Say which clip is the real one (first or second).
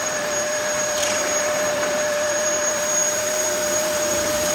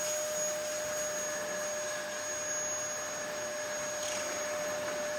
second